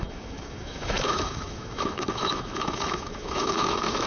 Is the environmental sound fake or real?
fake